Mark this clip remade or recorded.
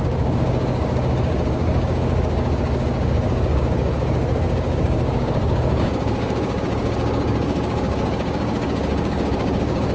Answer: remade